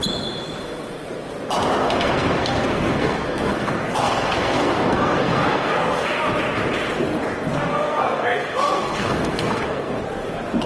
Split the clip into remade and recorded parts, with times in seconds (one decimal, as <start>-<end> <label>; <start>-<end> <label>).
0.0-1.8 recorded; 1.8-6.2 remade; 6.2-7.7 recorded; 7.7-10.0 remade; 10.0-10.7 recorded

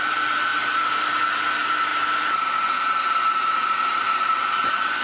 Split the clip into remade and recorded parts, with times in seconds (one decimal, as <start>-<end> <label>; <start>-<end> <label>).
0.0-5.0 recorded

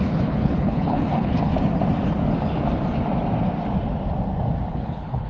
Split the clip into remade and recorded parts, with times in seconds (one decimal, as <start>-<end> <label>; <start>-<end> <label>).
0.0-1.5 remade; 1.5-4.7 recorded; 4.7-5.3 remade

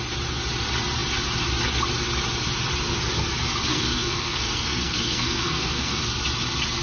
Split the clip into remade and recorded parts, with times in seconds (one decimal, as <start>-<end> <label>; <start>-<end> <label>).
0.0-3.7 recorded; 3.7-6.1 remade; 6.1-6.8 recorded